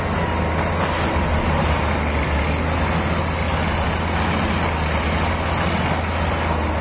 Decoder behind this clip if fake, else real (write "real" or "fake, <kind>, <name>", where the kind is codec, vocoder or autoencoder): real